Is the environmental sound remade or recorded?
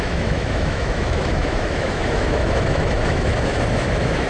remade